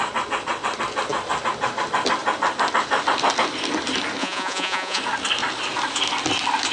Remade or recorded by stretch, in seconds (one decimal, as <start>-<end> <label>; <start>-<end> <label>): 0.0-4.2 recorded; 4.2-5.0 remade; 5.0-6.7 recorded